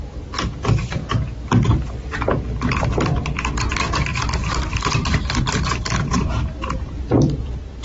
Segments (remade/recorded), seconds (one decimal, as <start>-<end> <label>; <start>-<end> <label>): 0.0-1.0 remade; 1.0-2.7 recorded; 2.7-7.8 remade